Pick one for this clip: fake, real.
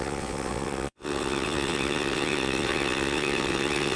fake